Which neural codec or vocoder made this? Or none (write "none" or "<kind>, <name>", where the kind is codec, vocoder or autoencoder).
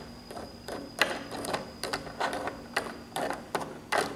none